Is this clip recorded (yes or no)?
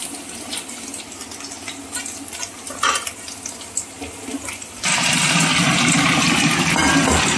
yes